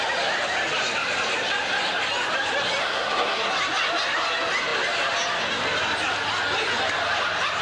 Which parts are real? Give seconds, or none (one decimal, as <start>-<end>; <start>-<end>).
0.0-2.8; 3.5-7.6